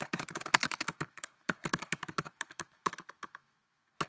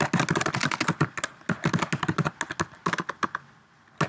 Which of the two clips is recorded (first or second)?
second